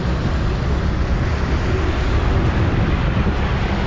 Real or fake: fake